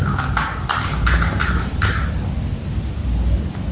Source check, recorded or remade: recorded